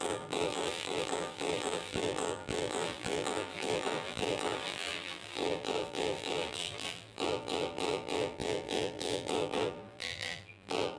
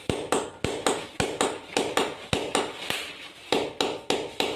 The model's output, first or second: first